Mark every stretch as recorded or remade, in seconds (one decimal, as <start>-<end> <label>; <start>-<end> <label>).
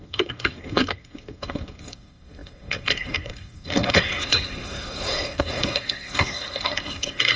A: 0.0-7.4 remade